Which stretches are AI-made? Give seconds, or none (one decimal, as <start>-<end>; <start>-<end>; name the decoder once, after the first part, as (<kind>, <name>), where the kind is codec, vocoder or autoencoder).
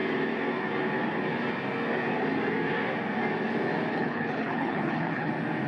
3.9-5.3 (codec, HILCodec)